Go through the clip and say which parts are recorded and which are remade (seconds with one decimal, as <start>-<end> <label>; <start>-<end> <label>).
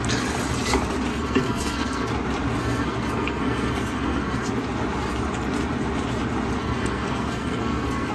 0.0-1.1 recorded; 1.1-2.1 remade; 2.1-2.6 recorded; 2.6-4.5 remade; 4.5-6.6 recorded; 6.6-8.1 remade